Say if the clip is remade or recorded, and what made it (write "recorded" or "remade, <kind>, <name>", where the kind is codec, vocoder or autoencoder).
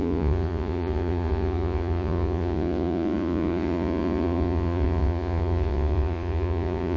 remade, vocoder, Vocos